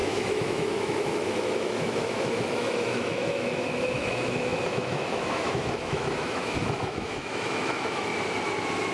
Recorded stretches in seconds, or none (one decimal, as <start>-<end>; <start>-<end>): 8.1-8.9